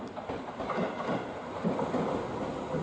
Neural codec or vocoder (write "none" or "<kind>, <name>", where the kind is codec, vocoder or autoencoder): none